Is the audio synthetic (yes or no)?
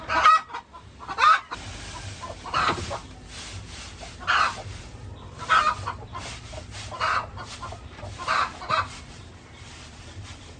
no